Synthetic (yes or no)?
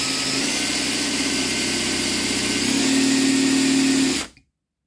no